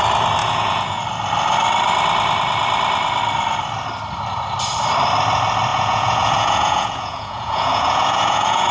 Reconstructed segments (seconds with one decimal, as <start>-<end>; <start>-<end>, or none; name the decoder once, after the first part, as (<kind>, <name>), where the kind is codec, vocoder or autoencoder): 0.4-1.0 (vocoder, Vocos); 5.7-8.7